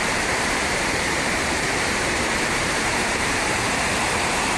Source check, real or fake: fake